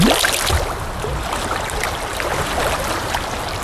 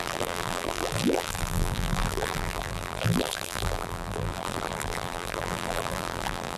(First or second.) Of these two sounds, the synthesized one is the second